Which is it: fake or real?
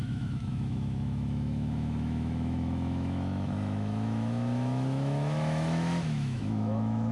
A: fake